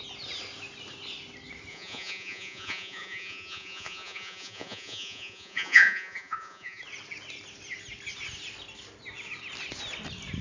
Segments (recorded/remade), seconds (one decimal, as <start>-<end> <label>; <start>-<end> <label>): 0.0-1.7 recorded; 1.7-6.8 remade; 6.8-10.4 recorded